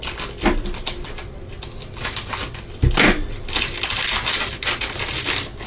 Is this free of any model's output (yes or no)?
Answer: yes